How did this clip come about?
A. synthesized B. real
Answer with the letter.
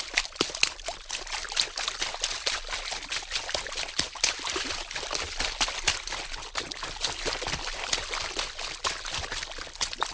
B